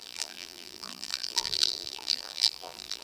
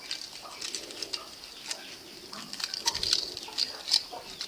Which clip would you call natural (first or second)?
second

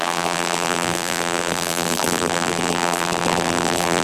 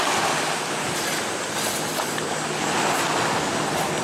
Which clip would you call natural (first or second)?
second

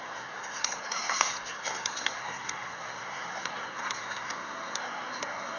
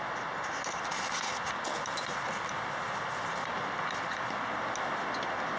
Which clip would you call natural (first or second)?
second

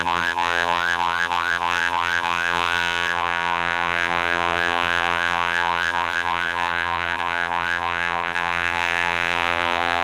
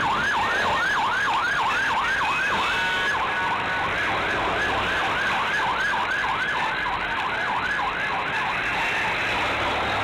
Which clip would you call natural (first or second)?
second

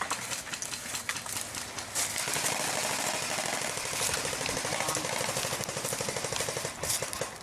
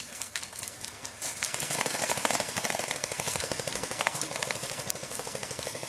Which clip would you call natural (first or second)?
first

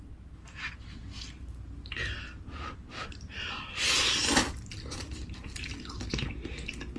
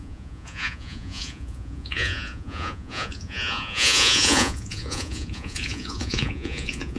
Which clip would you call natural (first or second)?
first